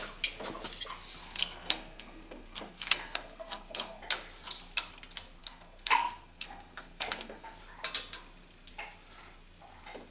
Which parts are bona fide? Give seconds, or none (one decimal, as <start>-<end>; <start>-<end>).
0.0-1.2; 4.0-5.4; 7.6-10.1